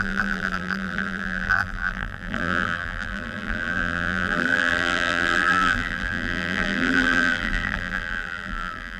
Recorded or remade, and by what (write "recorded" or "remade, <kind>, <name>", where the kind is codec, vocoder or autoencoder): remade, vocoder, BigVGAN v2